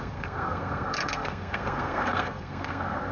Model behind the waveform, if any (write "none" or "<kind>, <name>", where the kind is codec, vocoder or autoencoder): codec, SNAC